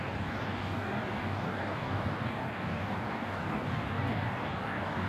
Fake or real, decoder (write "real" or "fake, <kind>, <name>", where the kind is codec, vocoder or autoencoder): fake, codec, DAC